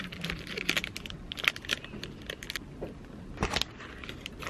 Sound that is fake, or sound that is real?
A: real